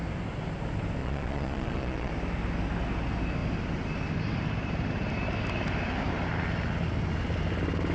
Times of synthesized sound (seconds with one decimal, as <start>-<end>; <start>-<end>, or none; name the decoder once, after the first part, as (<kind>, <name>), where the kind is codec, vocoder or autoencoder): 1.0-2.1 (vocoder, Vocos)